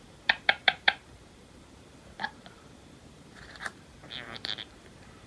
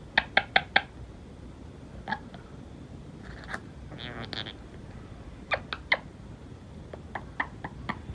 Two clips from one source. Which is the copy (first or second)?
first